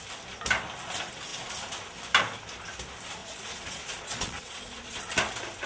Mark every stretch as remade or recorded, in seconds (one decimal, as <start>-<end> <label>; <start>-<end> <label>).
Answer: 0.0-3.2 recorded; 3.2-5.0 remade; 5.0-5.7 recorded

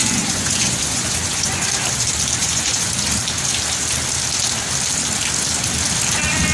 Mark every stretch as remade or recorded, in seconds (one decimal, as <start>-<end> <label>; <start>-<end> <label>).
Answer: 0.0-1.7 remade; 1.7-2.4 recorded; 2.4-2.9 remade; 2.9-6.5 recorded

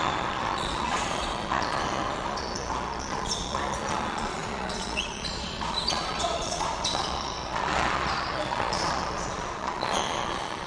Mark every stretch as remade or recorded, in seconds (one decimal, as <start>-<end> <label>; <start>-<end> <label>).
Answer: 0.0-10.7 remade